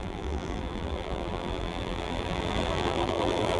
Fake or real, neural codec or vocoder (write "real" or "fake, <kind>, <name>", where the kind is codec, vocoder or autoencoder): fake, vocoder, BigVGAN v2